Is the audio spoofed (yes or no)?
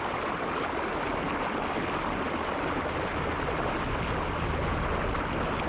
no